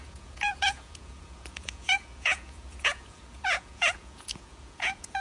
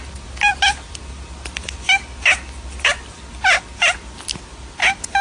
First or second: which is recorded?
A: second